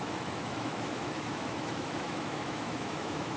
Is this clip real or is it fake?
fake